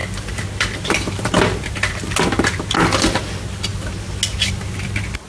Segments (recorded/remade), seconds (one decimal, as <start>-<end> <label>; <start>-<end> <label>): 0.0-5.3 recorded